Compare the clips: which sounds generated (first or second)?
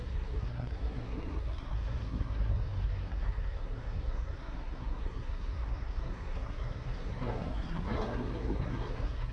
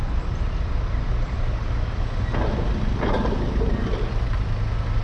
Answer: first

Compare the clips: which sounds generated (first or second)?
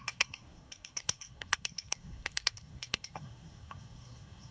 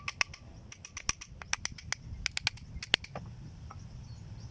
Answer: first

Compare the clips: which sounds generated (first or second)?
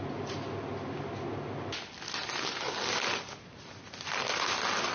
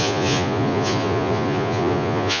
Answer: second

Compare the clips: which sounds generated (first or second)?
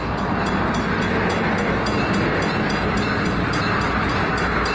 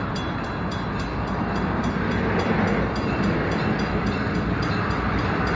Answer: second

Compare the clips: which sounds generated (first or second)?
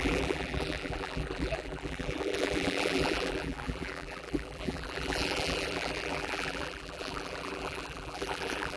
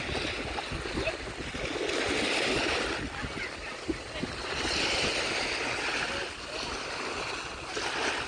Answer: first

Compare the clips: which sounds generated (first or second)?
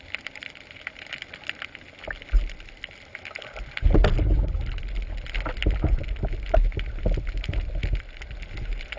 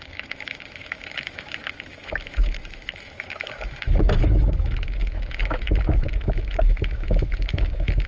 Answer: second